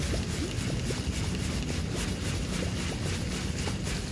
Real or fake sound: real